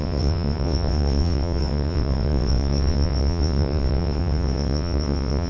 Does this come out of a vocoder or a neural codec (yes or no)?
yes